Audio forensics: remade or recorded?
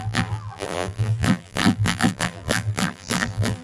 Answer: remade